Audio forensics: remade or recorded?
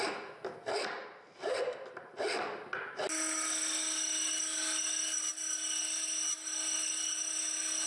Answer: recorded